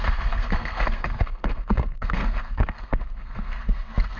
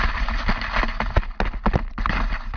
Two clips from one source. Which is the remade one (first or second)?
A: first